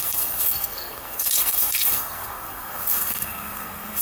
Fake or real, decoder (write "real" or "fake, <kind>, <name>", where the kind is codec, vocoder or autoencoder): fake, codec, SNAC